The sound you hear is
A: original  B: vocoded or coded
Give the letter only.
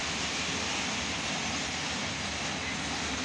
A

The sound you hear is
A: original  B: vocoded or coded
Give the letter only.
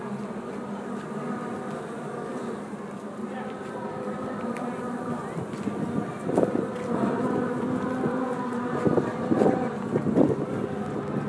A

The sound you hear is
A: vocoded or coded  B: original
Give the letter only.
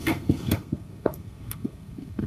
A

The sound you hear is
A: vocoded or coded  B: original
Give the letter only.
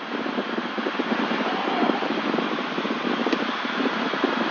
B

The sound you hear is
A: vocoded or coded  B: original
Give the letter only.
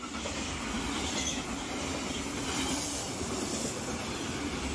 B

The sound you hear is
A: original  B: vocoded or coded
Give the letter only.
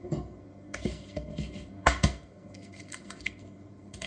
B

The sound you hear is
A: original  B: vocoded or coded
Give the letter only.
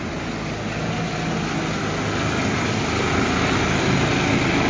A